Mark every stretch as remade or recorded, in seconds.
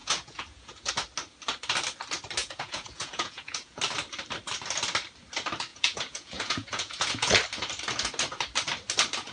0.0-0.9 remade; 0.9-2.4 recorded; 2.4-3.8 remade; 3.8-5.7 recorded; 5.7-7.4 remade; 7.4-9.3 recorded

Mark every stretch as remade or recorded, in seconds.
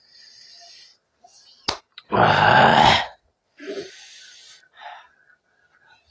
0.0-2.7 recorded; 2.7-3.9 remade; 3.9-6.1 recorded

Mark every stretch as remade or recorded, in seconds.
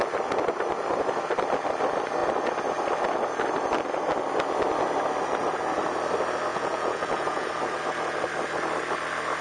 0.0-6.5 recorded; 6.5-7.5 remade; 7.5-9.4 recorded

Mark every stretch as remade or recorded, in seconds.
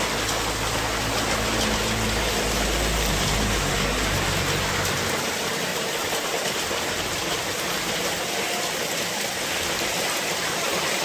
0.0-11.0 recorded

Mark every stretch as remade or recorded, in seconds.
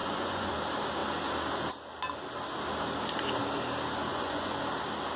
0.0-0.5 remade; 0.5-4.1 recorded; 4.1-4.6 remade; 4.6-5.2 recorded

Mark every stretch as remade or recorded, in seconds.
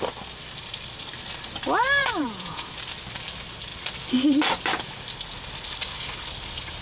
0.0-2.0 recorded; 2.0-2.7 remade; 2.7-6.8 recorded